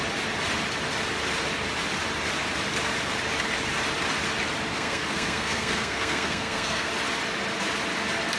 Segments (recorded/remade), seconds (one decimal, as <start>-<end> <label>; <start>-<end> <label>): 0.0-4.7 recorded; 4.7-6.9 remade; 6.9-8.4 recorded

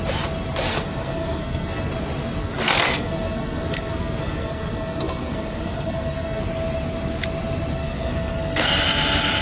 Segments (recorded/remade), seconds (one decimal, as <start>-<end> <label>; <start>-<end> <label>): 0.0-0.7 recorded; 0.7-1.9 remade; 1.9-2.4 recorded; 2.4-6.4 remade; 6.4-7.7 recorded; 7.7-8.7 remade; 8.7-9.4 recorded

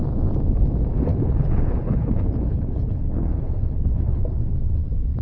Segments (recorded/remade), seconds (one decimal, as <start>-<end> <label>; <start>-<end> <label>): 0.0-1.1 recorded; 1.1-4.2 remade; 4.2-5.2 recorded

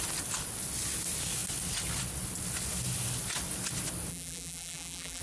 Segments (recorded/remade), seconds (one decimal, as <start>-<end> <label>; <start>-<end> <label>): 0.0-4.1 recorded; 4.1-5.2 remade

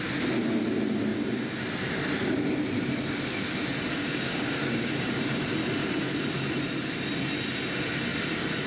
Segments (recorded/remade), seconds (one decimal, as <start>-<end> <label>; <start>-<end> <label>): 0.0-1.1 recorded; 1.1-1.6 remade; 1.6-4.0 recorded; 4.0-5.2 remade; 5.2-8.7 recorded

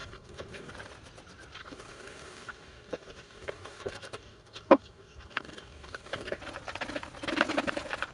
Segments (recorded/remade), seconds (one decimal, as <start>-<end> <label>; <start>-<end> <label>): 0.0-0.7 remade; 0.7-1.6 recorded; 1.6-6.4 remade; 6.4-8.1 recorded